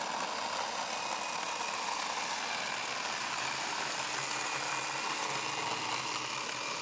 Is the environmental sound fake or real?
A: real